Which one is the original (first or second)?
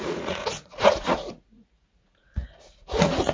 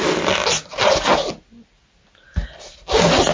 second